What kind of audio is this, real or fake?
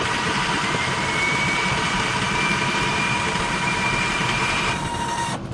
fake